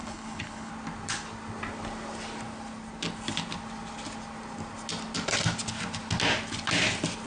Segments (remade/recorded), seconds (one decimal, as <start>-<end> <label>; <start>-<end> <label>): 0.0-0.7 remade; 0.7-7.3 recorded